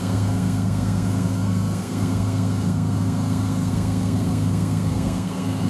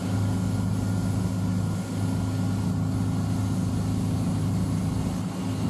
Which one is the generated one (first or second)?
first